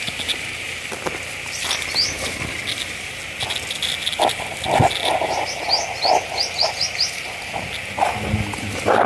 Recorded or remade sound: recorded